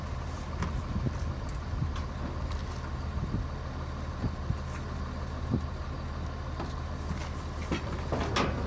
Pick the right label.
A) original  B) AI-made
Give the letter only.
A